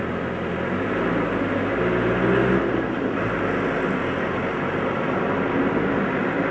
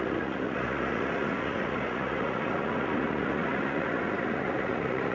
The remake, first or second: second